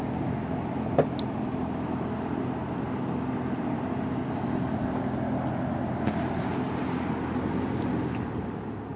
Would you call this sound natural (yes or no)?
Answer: yes